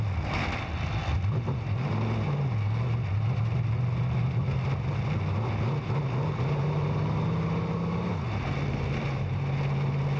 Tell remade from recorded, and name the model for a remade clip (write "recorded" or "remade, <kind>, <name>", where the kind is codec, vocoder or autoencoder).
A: recorded